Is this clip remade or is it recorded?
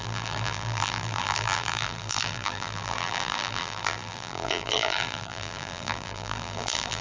remade